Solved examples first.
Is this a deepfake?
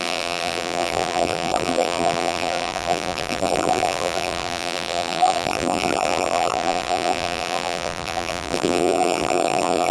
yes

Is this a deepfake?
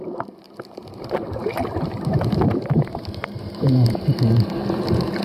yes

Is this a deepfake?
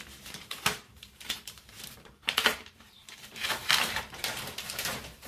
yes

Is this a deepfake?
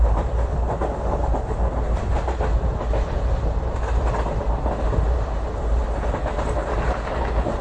no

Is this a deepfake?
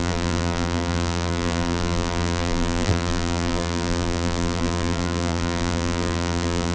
yes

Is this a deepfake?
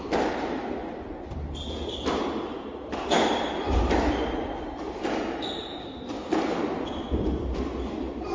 no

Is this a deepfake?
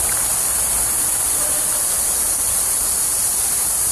yes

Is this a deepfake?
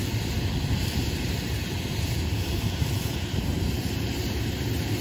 yes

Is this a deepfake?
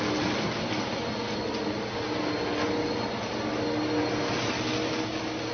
no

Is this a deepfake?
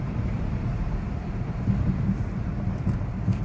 yes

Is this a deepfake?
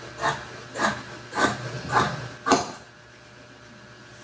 no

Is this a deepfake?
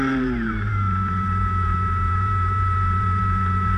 yes